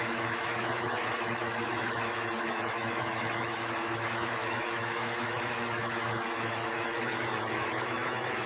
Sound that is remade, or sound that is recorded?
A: remade